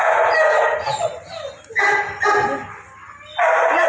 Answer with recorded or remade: recorded